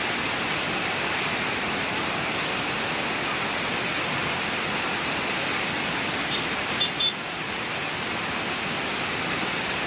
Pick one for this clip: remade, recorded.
recorded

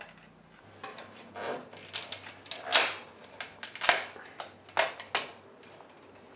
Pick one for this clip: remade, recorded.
recorded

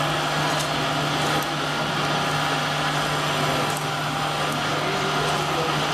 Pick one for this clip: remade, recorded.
recorded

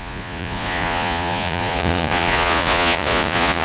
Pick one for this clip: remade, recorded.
remade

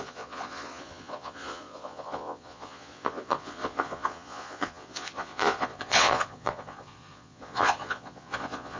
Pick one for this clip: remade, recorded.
remade